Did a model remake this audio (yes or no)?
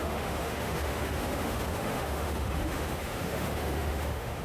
yes